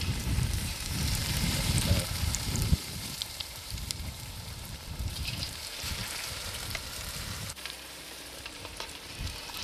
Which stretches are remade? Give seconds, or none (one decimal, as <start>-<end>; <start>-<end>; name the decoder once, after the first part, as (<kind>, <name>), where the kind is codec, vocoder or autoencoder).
0.0-9.6 (vocoder, BigVGAN v2)